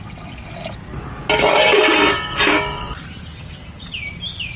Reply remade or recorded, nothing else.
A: recorded